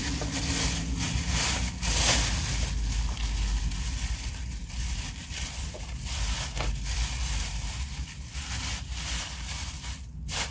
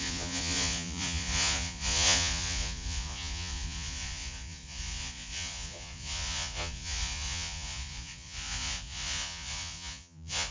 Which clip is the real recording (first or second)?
first